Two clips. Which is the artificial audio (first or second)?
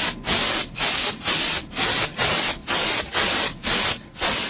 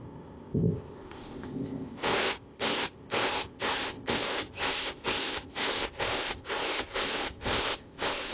second